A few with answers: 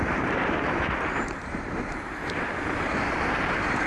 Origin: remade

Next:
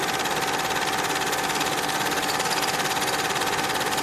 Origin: recorded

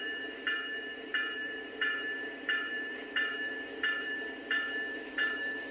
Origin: remade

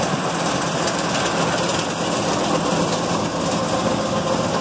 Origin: recorded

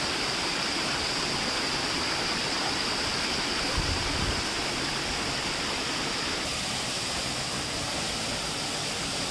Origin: recorded